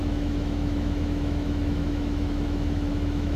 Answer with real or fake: fake